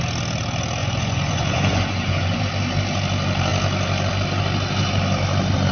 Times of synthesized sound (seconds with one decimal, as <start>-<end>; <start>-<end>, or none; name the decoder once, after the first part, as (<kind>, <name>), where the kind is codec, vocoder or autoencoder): 0.8-2.4 (vocoder, Vocos)